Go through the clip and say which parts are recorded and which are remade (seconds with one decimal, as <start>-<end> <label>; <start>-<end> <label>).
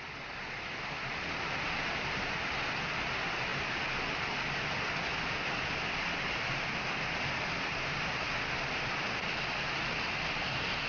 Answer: 0.0-10.9 recorded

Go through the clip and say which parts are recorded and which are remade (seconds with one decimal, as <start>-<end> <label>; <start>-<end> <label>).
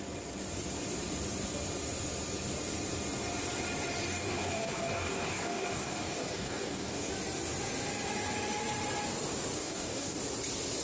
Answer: 0.0-4.1 recorded; 4.1-7.1 remade; 7.1-9.6 recorded; 9.6-10.2 remade; 10.2-10.8 recorded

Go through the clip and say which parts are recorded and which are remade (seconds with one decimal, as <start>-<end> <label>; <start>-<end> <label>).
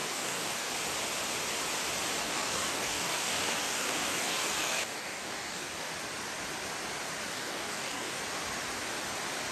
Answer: 0.0-0.7 remade; 0.7-2.2 recorded; 2.2-5.9 remade; 5.9-7.3 recorded; 7.3-8.2 remade; 8.2-9.5 recorded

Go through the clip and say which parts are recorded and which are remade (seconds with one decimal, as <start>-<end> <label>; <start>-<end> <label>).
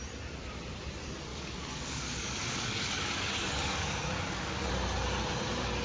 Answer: 0.0-1.3 recorded; 1.3-4.7 remade; 4.7-5.8 recorded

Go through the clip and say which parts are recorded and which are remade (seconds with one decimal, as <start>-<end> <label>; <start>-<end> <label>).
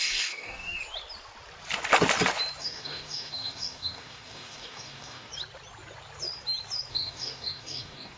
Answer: 0.0-0.8 remade; 0.8-2.6 recorded; 2.6-5.3 remade; 5.3-6.9 recorded; 6.9-8.2 remade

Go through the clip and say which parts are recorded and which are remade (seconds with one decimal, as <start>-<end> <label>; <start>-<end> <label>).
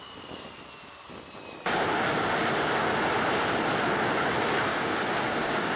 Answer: 0.0-4.7 recorded; 4.7-5.8 remade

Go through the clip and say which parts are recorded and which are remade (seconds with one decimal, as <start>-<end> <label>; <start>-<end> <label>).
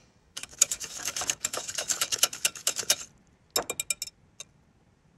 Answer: 0.0-3.0 remade; 3.0-5.2 recorded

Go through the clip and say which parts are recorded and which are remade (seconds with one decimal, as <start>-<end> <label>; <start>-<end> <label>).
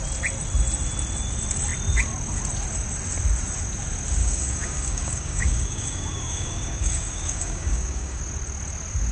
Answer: 0.0-4.2 recorded; 4.2-8.2 remade; 8.2-9.1 recorded